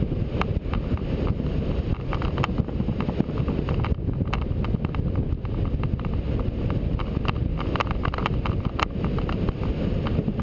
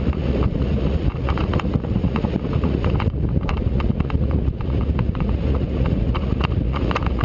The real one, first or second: first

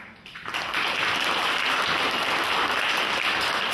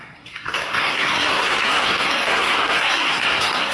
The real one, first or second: first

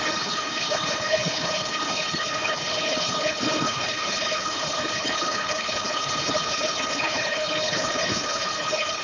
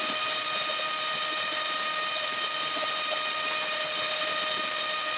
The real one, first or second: second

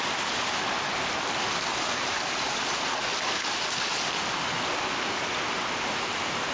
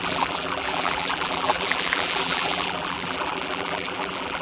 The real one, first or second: first